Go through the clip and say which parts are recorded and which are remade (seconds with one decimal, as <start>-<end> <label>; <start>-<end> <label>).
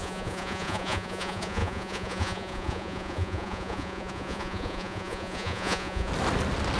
0.0-6.1 remade; 6.1-6.8 recorded